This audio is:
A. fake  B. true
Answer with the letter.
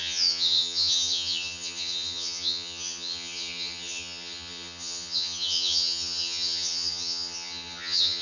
A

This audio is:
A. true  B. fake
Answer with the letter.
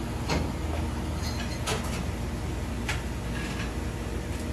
A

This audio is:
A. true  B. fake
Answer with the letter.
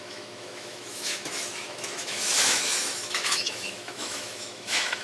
B